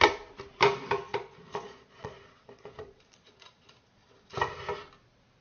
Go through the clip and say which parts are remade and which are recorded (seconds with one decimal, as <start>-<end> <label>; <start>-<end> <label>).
0.0-1.1 recorded; 1.1-4.3 remade; 4.3-5.4 recorded